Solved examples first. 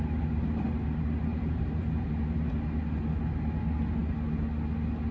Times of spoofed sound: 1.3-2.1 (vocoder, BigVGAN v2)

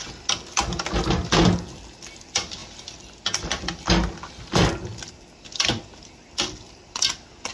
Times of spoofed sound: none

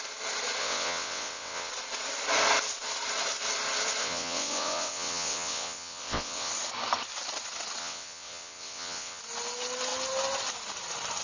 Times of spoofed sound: 0.6-1.7 (vocoder, WaveNeXt); 4.0-6.5; 7.8-9.2